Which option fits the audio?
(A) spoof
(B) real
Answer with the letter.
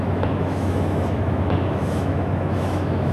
A